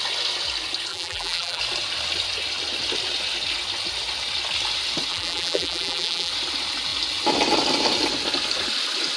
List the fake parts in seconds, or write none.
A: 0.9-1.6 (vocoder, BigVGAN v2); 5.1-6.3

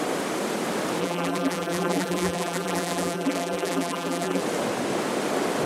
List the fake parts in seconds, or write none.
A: 1.0-4.4 (vocoder, BigVGAN v2)

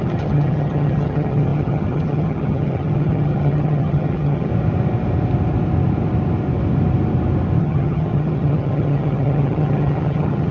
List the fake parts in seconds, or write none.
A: 0.0-4.5 (vocoder, HiFi-GAN); 7.6-10.5

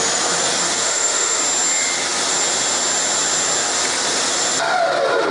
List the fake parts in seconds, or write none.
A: 0.8-1.4 (autoencoder, DAC-VAE)

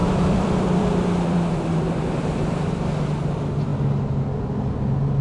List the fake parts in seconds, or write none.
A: 0.0-2.7 (vocoder, BigVGAN v2)

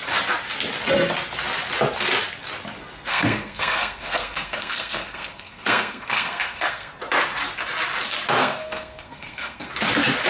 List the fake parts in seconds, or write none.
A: 3.1-6.9 (codec, SNAC); 8.4-9.7

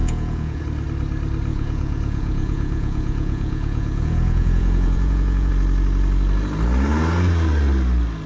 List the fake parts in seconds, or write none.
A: 0.0-0.6 (vocoder, Vocos); 1.5-5.5